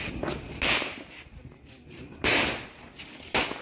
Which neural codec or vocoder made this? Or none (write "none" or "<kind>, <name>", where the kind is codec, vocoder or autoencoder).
none